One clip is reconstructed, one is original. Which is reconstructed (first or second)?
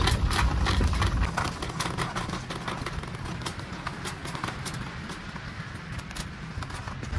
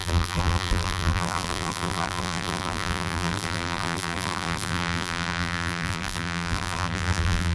second